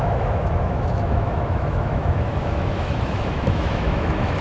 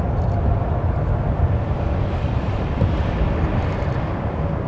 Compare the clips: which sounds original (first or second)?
second